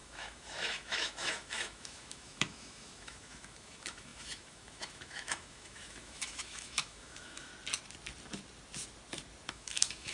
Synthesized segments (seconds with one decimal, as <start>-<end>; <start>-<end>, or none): 0.0-7.5; 9.5-10.1